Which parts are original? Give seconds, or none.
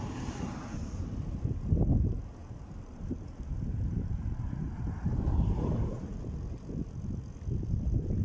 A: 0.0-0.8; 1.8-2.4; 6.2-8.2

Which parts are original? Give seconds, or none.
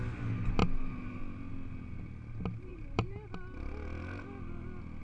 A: 0.0-0.6; 1.2-2.7; 3.3-5.0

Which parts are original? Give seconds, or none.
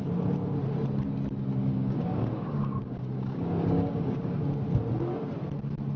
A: 0.0-1.6; 4.4-6.0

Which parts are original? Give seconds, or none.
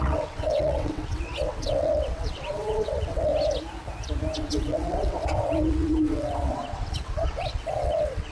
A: 3.3-4.4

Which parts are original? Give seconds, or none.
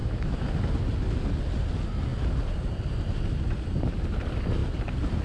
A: 0.5-5.2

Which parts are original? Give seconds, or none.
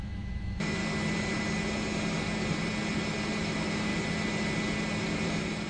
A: 0.8-3.4; 3.9-5.7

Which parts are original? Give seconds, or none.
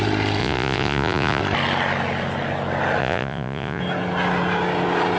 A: 0.0-0.4; 1.4-3.0; 3.8-5.2